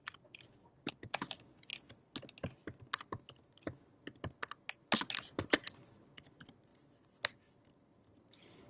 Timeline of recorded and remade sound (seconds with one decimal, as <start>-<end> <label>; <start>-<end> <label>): 0.0-1.7 remade; 1.7-5.5 recorded; 5.5-6.7 remade; 6.7-7.7 recorded; 7.7-8.7 remade